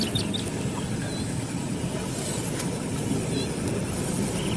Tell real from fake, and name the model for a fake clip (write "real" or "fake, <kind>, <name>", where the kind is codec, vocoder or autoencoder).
real